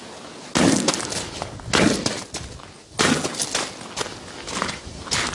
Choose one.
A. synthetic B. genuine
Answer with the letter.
B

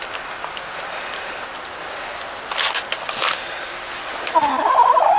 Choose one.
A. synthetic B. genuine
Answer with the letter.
B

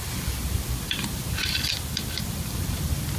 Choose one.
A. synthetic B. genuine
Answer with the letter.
A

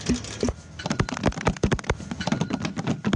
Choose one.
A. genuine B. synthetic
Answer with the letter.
A